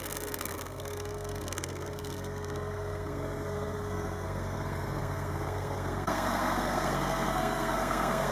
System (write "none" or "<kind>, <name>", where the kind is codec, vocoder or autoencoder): codec, SNAC